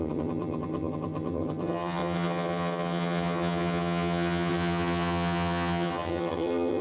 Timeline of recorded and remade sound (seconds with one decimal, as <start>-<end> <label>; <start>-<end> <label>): 0.0-6.8 remade